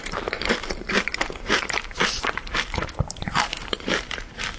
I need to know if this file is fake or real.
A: fake